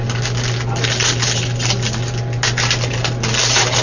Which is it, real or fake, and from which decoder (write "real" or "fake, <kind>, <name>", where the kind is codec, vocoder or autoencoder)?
real